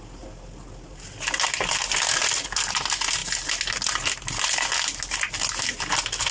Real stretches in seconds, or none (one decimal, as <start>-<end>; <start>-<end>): 0.0-6.3